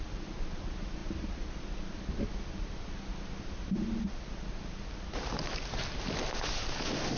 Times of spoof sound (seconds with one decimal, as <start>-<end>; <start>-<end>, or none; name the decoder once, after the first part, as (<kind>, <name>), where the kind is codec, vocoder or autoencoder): none